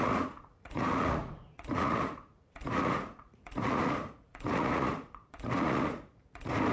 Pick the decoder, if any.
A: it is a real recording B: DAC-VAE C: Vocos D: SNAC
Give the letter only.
C